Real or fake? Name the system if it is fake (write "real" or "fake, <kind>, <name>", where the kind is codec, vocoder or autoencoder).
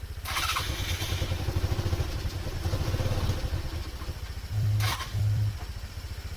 fake, vocoder, BigVGAN v2